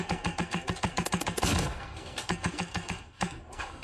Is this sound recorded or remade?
remade